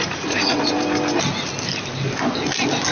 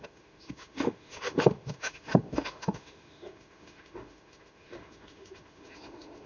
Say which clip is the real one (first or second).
first